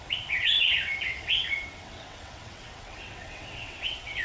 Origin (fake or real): fake